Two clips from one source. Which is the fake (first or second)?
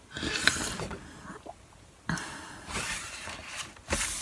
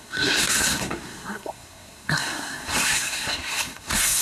second